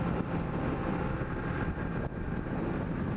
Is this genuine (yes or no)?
yes